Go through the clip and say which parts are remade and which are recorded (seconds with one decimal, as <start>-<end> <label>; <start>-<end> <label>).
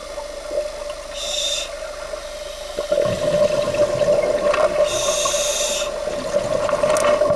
0.0-7.4 recorded